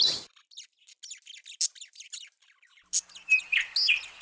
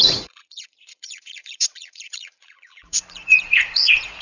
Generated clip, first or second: second